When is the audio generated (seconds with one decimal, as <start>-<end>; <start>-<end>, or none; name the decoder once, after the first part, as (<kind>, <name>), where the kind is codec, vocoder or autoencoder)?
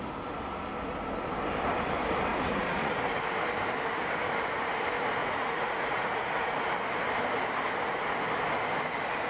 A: 2.3-2.9 (vocoder, Vocos); 5.2-6.7